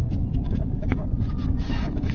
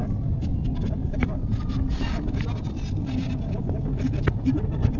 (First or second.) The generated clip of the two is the first